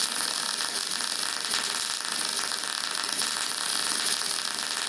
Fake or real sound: real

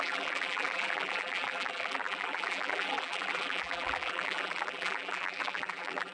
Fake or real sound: fake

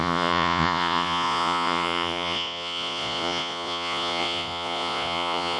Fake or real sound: fake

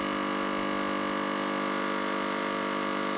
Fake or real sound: real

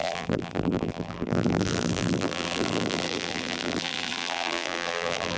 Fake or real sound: fake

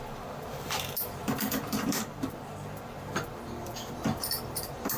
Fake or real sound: fake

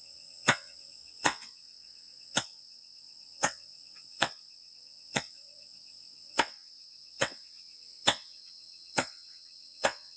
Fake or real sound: fake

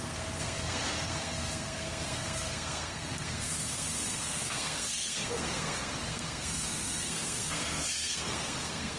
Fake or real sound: fake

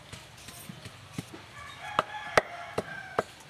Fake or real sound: real